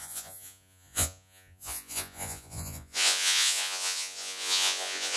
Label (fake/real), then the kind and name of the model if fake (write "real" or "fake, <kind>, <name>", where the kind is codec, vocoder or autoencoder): fake, vocoder, Vocos